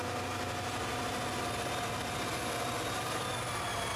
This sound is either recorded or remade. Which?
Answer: recorded